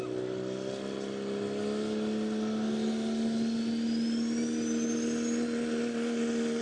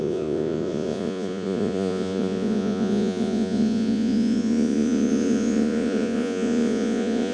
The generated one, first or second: second